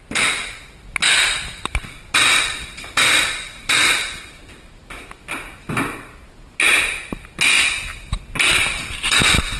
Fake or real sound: real